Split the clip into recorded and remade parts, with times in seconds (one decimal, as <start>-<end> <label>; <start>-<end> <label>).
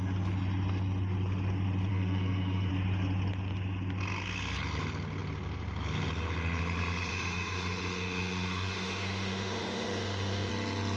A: 0.0-1.9 recorded; 1.9-2.7 remade; 2.7-7.1 recorded; 7.1-10.5 remade; 10.5-11.0 recorded